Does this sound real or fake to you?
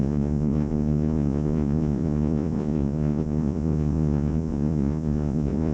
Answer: fake